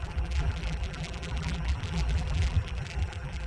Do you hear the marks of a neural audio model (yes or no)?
yes